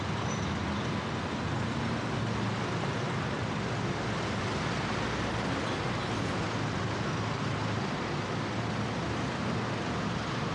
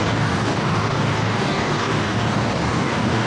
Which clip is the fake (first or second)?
second